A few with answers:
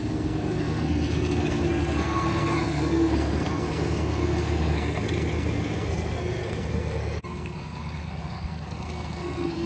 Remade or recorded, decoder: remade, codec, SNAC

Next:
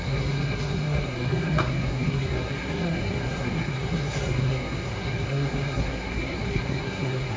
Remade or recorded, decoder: remade, codec, SNAC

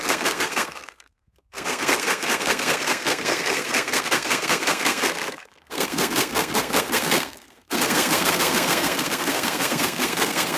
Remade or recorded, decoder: remade, codec, SNAC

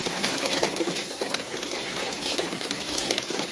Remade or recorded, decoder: remade, codec, SNAC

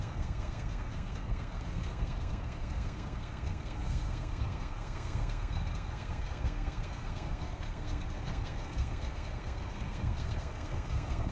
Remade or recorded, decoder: remade, codec, SNAC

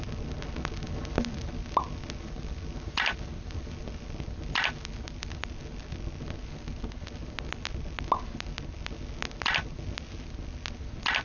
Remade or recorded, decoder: recorded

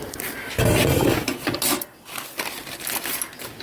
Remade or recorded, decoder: recorded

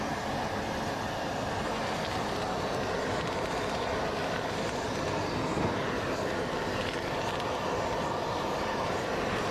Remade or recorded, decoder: recorded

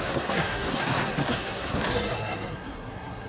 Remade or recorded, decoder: remade, codec, SNAC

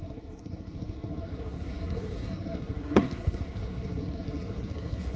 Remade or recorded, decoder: remade, codec, SNAC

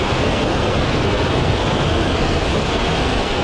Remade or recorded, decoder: remade, codec, SNAC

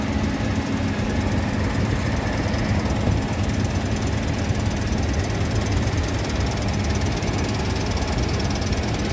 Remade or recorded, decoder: recorded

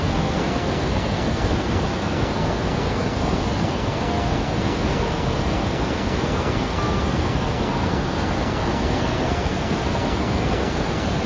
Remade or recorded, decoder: remade, codec, SNAC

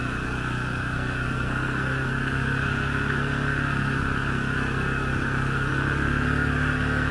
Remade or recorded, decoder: remade, codec, SNAC